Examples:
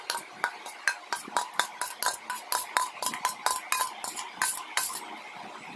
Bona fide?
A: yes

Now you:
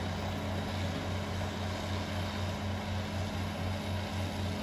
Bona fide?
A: yes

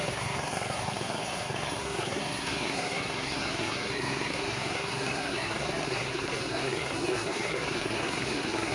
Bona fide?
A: no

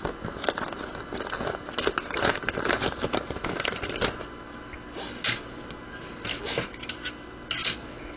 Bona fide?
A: yes